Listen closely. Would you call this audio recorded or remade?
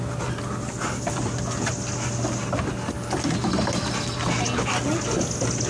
recorded